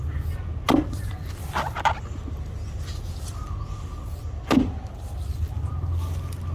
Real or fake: real